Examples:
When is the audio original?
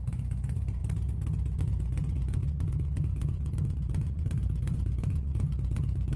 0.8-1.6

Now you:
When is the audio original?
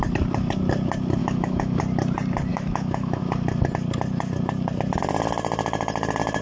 0.0-1.2; 1.8-2.5; 3.2-6.4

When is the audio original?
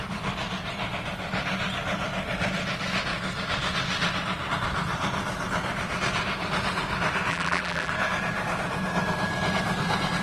0.0-7.3; 7.9-10.2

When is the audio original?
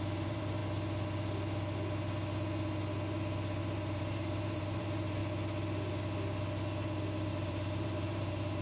0.6-3.6; 5.2-7.3